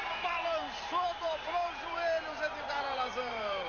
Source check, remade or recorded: remade